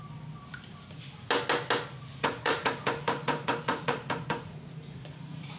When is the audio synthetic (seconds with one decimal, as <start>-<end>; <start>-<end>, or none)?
2.1-5.6